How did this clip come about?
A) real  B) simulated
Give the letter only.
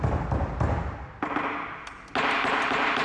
A